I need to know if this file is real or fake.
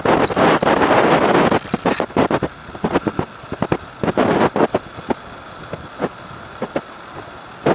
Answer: real